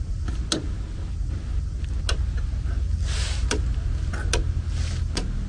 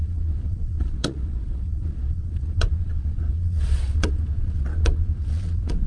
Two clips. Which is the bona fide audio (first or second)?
first